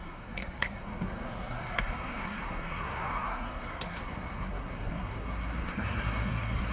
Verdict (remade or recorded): remade